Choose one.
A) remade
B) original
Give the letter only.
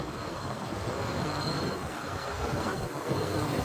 A